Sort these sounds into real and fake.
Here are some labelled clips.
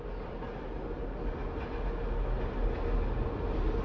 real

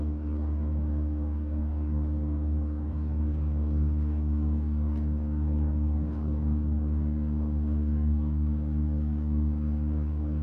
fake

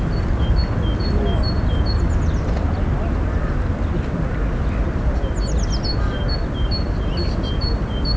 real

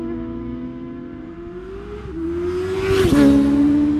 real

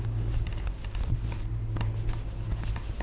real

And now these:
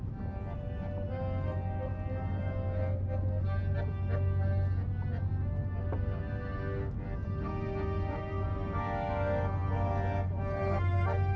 real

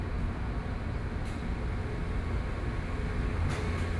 real